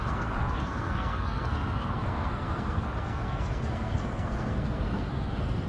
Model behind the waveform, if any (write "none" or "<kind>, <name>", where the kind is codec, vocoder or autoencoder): codec, SNAC